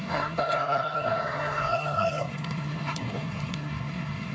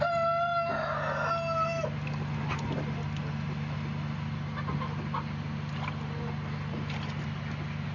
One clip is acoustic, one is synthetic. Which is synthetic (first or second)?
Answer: first